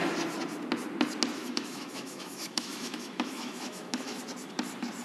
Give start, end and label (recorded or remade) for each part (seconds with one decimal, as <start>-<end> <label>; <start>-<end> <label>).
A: 0.0-1.4 recorded; 1.4-4.2 remade; 4.2-5.0 recorded